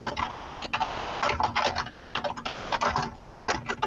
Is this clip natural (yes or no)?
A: yes